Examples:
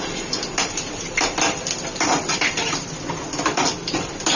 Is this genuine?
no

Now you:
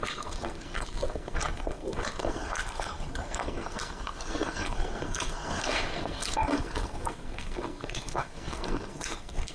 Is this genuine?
no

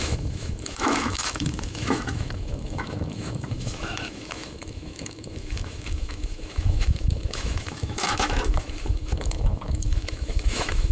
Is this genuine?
no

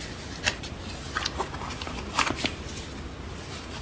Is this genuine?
yes